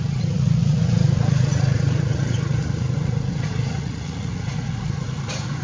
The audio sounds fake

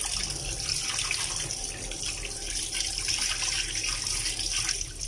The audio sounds real